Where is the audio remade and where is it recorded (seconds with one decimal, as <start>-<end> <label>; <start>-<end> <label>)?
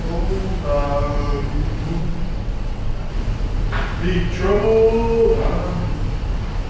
0.0-2.0 recorded; 2.0-3.1 remade; 3.1-6.7 recorded